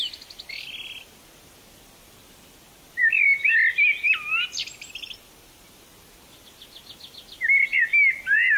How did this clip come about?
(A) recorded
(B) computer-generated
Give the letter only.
A